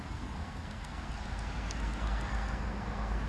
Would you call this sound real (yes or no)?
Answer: no